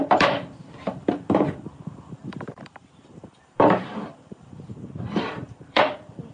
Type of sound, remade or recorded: remade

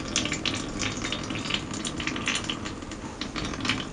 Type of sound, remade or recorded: recorded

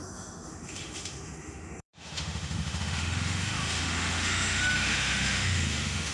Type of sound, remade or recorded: remade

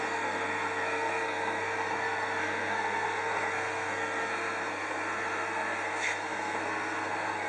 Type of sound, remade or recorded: remade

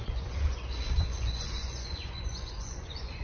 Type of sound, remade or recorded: remade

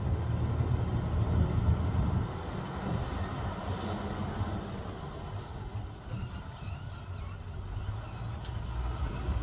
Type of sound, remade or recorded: recorded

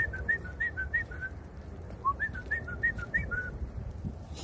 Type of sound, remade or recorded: remade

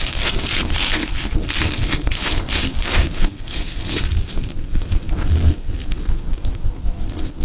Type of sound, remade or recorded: remade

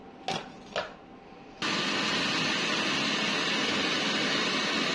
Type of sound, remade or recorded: recorded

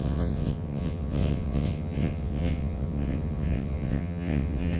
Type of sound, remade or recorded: remade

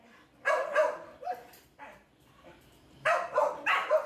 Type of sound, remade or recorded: recorded